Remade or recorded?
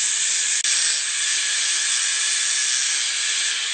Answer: recorded